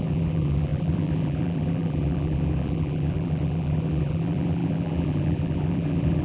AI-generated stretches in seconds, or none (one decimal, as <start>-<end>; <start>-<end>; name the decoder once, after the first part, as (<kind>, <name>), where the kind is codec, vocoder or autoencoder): 0.0-6.2 (vocoder, BigVGAN v2)